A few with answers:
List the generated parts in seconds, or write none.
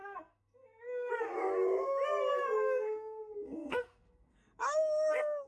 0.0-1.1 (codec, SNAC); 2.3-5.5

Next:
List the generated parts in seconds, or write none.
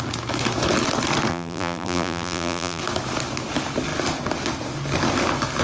1.3-2.8 (vocoder, BigVGAN v2)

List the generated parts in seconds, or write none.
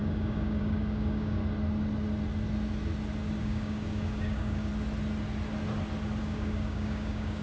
0.0-1.4 (codec, DAC); 3.4-4.7; 6.2-7.4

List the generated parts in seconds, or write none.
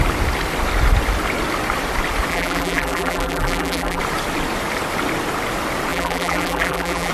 2.3-4.0 (vocoder, BigVGAN v2); 5.9-7.1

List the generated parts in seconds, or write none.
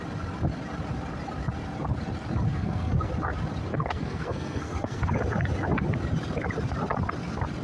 2.5-3.1 (codec, SNAC); 3.7-5.1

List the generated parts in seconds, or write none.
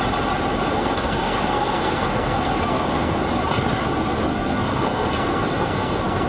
0.7-3.2 (codec, SNAC); 4.3-6.3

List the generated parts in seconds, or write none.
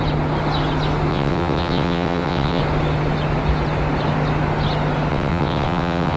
1.1-2.6 (vocoder, WaveNeXt); 5.1-6.2